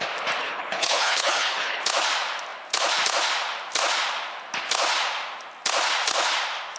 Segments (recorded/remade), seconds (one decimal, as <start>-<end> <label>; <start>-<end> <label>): 0.0-0.4 recorded; 0.4-1.8 remade; 1.8-6.8 recorded